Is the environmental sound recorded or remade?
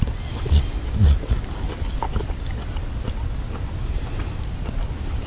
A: recorded